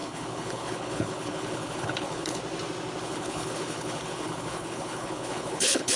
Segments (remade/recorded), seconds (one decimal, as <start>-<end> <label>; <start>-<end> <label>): 0.0-2.4 remade; 2.4-3.0 recorded; 3.0-6.0 remade